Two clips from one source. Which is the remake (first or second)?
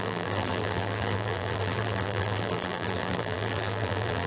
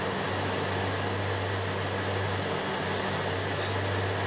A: first